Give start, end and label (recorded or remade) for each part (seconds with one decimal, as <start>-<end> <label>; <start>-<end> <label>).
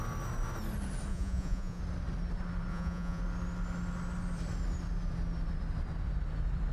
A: 0.0-1.1 recorded; 1.1-1.8 remade; 1.8-2.7 recorded; 2.7-3.2 remade; 3.2-6.7 recorded